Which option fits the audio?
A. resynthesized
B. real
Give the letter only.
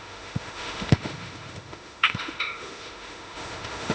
A